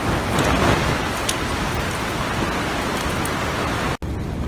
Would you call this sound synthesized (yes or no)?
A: no